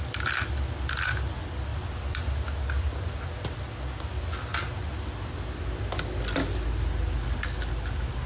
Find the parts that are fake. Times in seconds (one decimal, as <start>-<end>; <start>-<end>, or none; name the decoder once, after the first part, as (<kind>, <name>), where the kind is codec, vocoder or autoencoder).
none